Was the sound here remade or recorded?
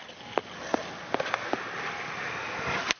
recorded